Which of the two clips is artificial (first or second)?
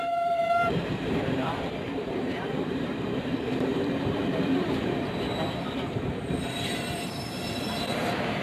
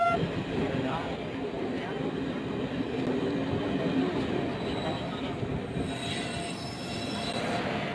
first